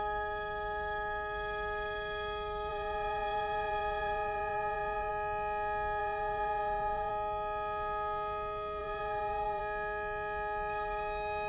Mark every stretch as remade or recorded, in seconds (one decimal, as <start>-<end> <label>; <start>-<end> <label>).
0.0-2.7 recorded; 2.7-5.1 remade; 5.1-6.0 recorded; 6.0-7.1 remade; 7.1-8.8 recorded; 8.8-9.6 remade; 9.6-11.5 recorded